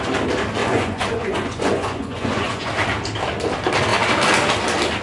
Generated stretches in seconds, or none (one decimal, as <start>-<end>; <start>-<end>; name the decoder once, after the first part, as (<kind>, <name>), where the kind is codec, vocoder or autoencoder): 0.6-2.7 (vocoder, Vocos)